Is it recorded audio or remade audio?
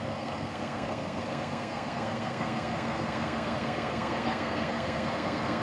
remade